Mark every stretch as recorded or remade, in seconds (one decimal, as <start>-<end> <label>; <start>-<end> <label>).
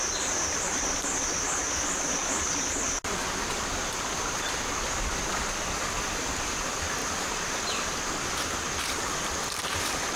0.0-10.2 recorded